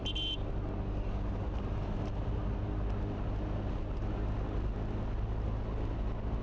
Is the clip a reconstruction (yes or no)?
no